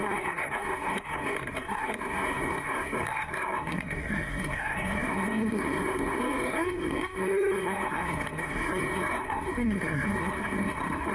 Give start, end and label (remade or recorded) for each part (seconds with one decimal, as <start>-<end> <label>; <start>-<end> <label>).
0.0-11.1 remade